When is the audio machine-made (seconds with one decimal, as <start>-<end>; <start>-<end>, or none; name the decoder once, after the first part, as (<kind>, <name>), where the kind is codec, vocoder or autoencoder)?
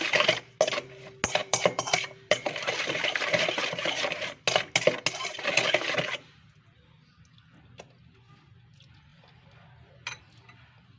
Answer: 1.4-4.2 (vocoder, BigVGAN v2); 9.1-10.2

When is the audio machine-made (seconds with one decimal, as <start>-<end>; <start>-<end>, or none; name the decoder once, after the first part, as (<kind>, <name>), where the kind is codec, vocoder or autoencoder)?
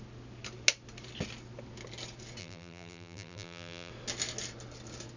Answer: 2.4-3.9 (vocoder, BigVGAN v2)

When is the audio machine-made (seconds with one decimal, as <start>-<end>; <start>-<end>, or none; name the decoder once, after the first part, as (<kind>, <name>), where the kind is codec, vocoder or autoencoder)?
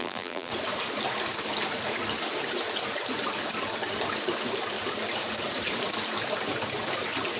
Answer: 0.0-0.5 (vocoder, BigVGAN v2)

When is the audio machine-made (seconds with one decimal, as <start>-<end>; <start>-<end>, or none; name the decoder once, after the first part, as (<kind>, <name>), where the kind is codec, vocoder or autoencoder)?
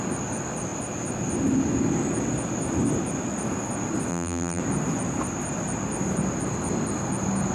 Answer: 4.1-4.6 (vocoder, BigVGAN v2)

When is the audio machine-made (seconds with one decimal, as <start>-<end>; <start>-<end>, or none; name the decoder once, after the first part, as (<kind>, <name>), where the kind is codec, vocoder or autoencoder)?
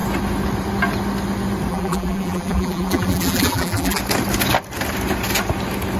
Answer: 1.7-4.0 (vocoder, BigVGAN v2)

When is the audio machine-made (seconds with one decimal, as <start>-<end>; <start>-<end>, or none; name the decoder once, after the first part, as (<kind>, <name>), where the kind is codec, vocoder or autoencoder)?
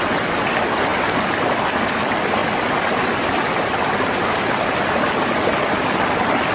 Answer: none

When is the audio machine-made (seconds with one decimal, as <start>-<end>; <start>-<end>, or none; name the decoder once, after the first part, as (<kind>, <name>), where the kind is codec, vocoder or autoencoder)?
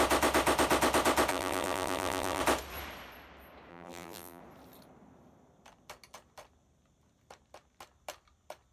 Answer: 1.3-2.4 (vocoder, BigVGAN v2); 3.7-4.4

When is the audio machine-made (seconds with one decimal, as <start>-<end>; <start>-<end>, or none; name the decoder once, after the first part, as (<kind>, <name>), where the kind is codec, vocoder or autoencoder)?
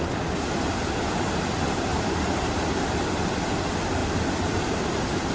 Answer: 1.9-2.9 (vocoder, BigVGAN v2); 4.0-5.3